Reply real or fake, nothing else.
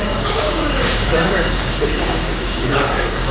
fake